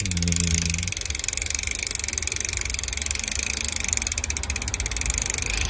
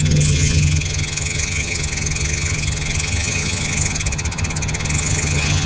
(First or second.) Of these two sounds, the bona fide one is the first